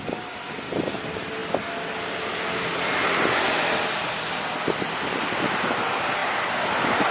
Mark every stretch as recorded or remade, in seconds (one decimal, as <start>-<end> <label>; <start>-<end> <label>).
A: 0.0-7.1 recorded